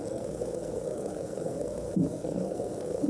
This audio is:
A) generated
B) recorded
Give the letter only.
A